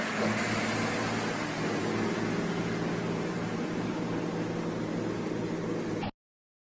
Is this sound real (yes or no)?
yes